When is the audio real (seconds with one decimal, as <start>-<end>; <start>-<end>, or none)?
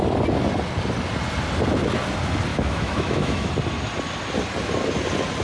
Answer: 0.0-2.5; 3.5-5.4